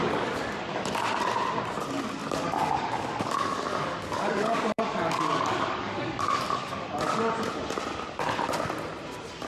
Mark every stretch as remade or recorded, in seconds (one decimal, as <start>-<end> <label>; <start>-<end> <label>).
0.0-0.5 remade; 0.5-2.2 recorded; 2.2-7.3 remade; 7.3-9.5 recorded